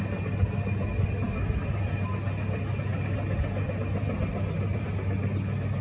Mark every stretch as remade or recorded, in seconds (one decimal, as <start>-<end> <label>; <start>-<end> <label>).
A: 0.0-5.8 recorded